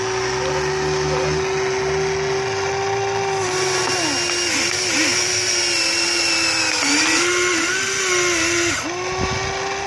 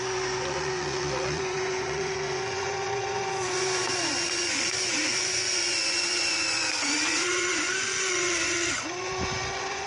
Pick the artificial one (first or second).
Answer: second